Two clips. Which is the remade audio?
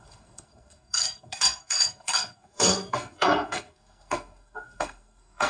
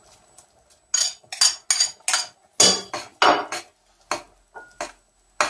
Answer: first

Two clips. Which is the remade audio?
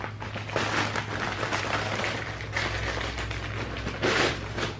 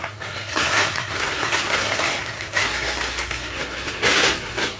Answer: second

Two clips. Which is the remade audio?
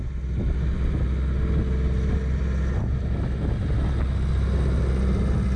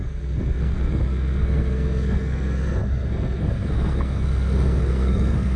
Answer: second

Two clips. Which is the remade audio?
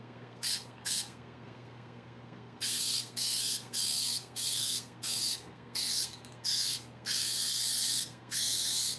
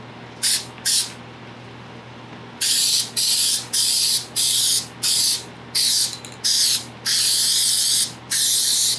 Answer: first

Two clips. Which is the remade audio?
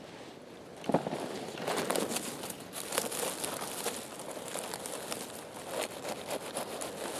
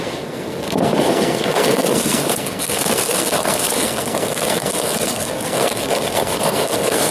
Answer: second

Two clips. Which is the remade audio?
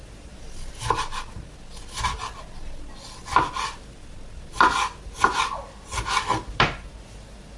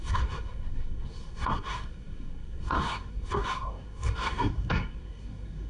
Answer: second